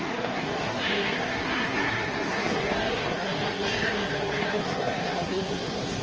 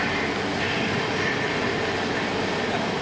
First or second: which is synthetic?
first